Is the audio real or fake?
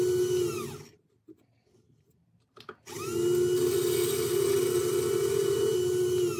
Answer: real